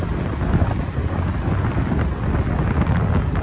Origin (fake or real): real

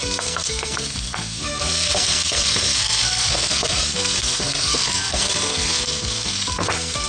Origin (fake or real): fake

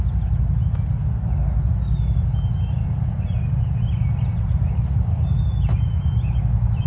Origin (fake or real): real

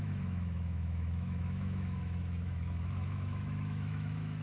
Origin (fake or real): fake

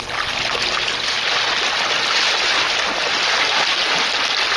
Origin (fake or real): real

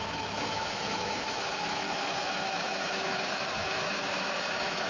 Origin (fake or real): fake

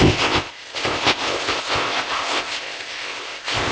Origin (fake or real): fake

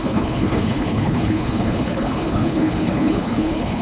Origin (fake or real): fake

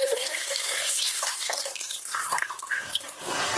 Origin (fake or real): fake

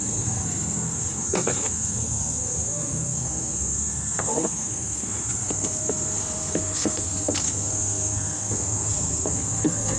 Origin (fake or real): fake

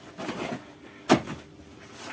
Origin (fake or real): real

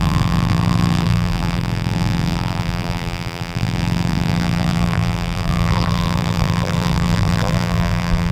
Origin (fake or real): fake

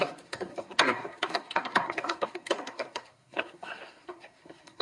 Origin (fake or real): fake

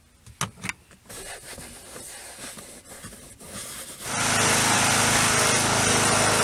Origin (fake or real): real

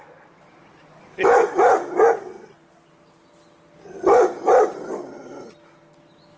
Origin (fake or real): real